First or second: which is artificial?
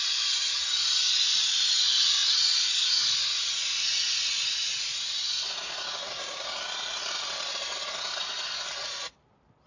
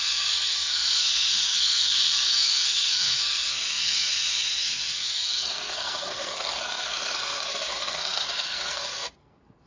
second